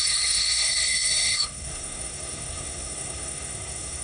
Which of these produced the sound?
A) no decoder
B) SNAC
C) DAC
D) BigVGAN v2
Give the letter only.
B